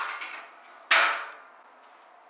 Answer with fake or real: real